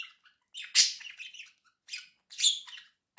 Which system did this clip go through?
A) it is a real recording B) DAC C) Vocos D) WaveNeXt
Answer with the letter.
A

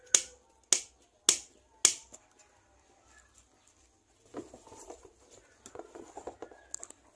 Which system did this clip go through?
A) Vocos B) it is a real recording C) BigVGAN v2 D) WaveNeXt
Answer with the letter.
B